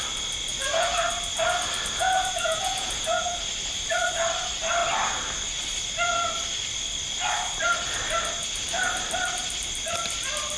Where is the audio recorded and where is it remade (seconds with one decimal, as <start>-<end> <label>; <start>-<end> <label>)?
0.0-0.5 recorded; 0.5-1.0 remade; 1.0-2.0 recorded; 2.0-3.4 remade; 3.4-10.6 recorded